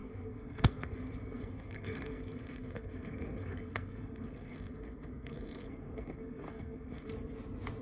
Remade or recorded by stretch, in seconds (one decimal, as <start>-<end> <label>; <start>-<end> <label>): 0.0-7.1 remade; 7.1-7.8 recorded